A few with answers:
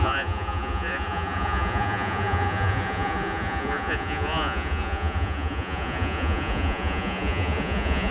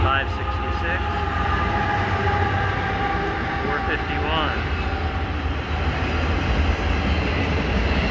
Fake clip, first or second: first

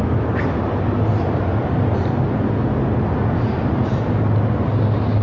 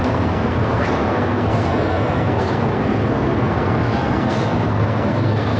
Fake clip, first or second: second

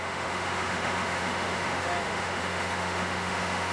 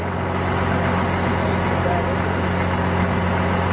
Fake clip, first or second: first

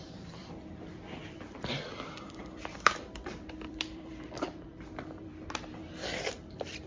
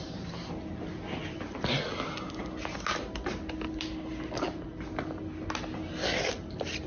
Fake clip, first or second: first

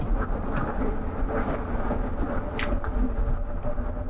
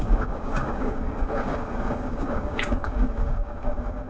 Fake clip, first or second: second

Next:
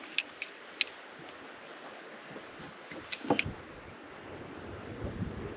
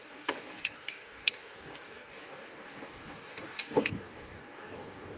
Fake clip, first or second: second